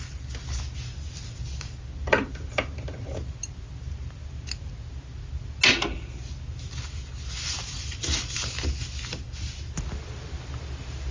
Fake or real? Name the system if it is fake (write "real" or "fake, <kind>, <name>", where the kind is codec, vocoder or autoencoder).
real